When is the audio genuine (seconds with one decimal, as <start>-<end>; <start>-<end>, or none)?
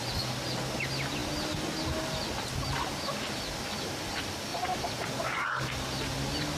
0.0-4.5; 5.1-6.6